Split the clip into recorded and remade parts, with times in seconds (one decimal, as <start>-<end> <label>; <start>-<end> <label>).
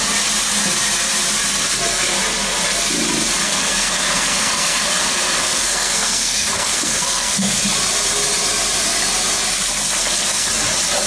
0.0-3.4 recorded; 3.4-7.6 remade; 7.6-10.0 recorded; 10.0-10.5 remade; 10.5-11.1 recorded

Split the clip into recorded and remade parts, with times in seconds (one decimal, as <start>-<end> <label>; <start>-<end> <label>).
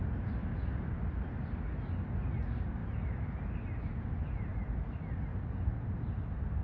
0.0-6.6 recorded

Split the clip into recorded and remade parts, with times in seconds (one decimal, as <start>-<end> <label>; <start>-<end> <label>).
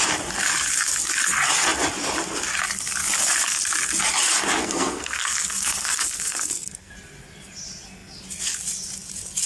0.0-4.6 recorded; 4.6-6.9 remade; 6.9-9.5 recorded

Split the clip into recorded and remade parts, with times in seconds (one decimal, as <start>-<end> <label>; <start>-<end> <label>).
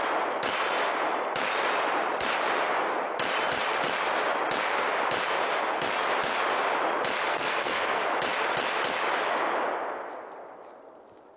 0.0-7.3 recorded; 7.3-8.0 remade; 8.0-11.4 recorded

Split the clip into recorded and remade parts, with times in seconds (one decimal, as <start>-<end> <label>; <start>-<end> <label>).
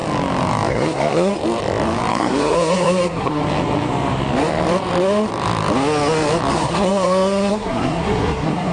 0.0-0.7 recorded; 0.7-1.3 remade; 1.3-2.1 recorded; 2.1-3.4 remade; 3.4-6.5 recorded; 6.5-8.7 remade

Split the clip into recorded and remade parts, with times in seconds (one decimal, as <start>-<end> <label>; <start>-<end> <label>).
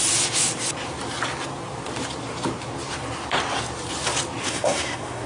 0.0-4.4 recorded; 4.4-5.3 remade